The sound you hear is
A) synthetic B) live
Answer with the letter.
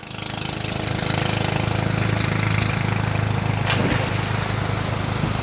B